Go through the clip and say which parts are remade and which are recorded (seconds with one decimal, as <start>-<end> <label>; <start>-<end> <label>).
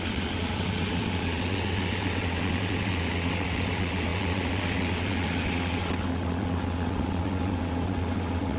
0.0-8.6 remade